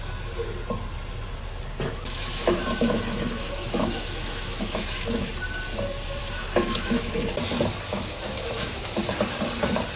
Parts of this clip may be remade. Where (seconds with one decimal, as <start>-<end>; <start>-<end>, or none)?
1.9-5.2; 6.2-7.1; 7.9-9.0